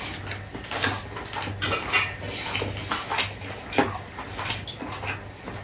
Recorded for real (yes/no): yes